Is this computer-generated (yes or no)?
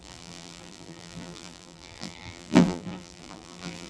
yes